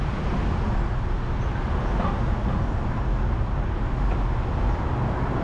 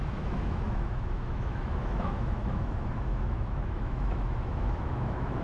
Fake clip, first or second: second